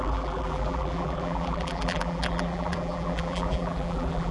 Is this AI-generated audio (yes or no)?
yes